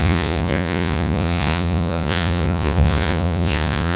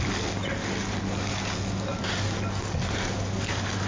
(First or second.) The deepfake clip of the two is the first